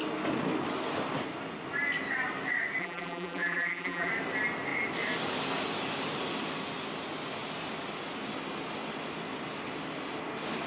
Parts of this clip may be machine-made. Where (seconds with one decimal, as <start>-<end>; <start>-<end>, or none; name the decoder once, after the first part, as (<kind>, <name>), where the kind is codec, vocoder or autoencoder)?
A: 2.8-4.1 (vocoder, BigVGAN v2)